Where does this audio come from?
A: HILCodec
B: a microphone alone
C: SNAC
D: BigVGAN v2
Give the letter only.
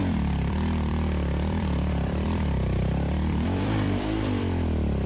D